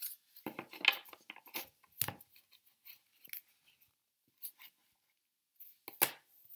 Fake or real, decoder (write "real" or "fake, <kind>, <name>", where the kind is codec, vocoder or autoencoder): real